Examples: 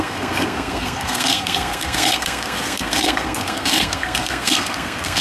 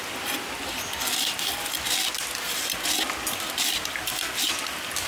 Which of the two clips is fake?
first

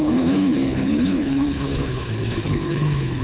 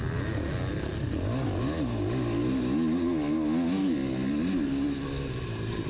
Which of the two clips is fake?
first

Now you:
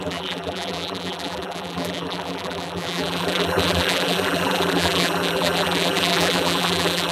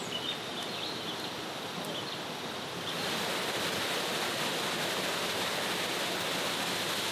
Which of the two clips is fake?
first